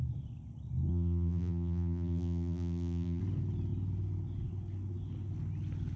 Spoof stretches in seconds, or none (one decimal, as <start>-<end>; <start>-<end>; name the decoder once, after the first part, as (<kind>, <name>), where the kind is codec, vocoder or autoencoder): 0.9-3.2 (vocoder, BigVGAN v2)